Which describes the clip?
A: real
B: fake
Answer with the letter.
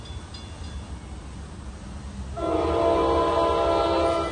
A